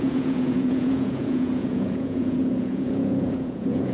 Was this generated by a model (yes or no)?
yes